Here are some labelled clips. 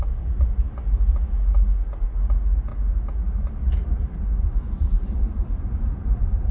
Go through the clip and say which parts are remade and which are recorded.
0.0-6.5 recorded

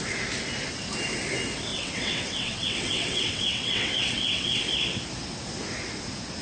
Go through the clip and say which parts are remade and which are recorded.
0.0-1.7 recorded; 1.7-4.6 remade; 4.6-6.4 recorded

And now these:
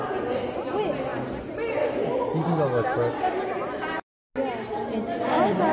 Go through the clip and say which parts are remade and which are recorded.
0.0-5.7 recorded

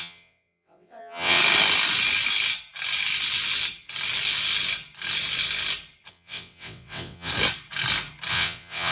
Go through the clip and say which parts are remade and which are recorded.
0.0-1.4 remade; 1.4-6.1 recorded; 6.1-7.3 remade; 7.3-8.3 recorded; 8.3-8.9 remade

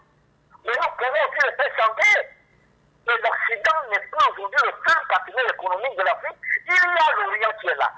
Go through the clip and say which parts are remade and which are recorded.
0.0-0.6 recorded; 0.6-1.2 remade; 1.2-8.0 recorded

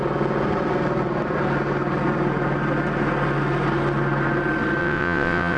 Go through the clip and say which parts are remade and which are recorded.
0.0-4.8 recorded; 4.8-5.6 remade

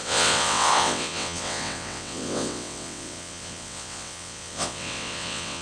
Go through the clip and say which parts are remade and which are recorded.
0.0-5.6 remade

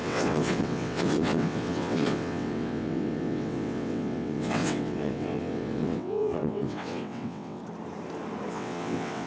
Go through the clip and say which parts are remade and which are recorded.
0.0-7.6 remade; 7.6-8.5 recorded; 8.5-9.3 remade